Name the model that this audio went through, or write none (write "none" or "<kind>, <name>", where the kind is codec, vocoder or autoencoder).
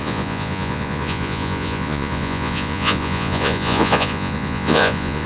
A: vocoder, Vocos